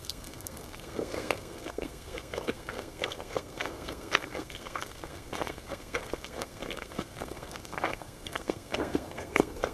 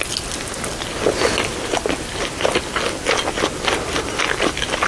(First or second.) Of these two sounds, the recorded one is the second